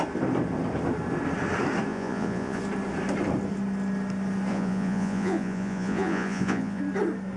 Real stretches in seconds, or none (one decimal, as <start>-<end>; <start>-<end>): 0.0-1.9; 2.6-4.5; 6.8-7.4